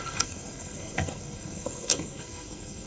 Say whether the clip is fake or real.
fake